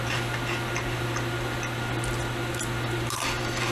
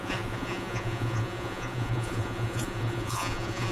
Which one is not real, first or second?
second